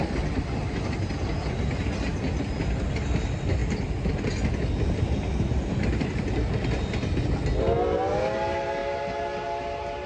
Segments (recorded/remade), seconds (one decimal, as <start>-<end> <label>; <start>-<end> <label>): 0.0-10.1 recorded